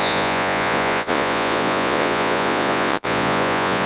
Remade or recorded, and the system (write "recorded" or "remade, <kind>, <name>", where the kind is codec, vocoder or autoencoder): remade, vocoder, Vocos